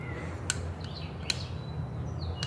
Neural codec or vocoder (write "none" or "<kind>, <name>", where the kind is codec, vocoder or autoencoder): none